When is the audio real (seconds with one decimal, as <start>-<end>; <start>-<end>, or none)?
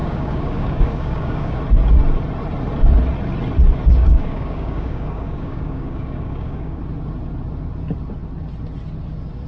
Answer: 1.6-3.9; 6.8-9.5